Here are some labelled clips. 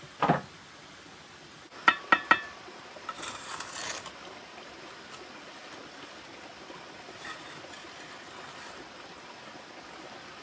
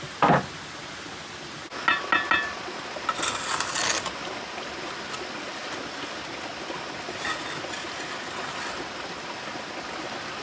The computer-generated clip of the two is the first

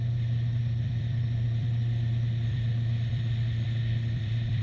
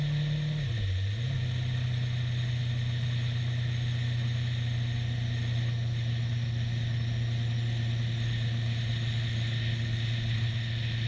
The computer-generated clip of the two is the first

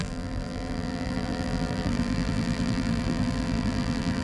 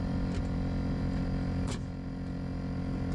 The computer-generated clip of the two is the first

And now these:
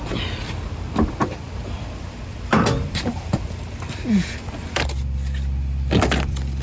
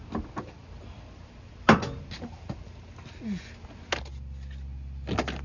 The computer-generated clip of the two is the first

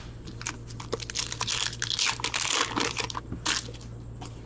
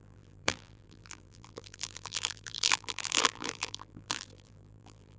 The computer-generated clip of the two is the second